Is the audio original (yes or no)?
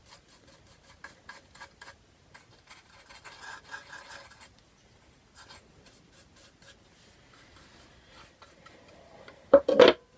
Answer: yes